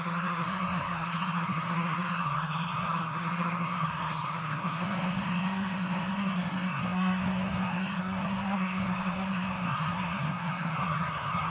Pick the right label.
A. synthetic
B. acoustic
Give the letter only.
A